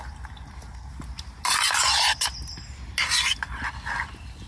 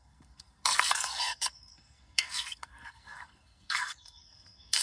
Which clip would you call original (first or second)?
first